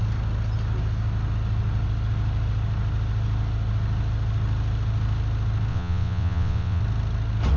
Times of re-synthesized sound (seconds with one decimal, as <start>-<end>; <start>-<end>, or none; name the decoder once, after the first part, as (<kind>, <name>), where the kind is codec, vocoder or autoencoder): 5.7-6.8 (vocoder, WaveNeXt)